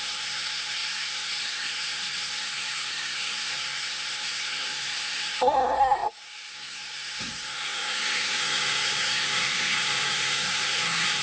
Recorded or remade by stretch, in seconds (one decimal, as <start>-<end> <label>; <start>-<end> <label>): 0.0-11.2 remade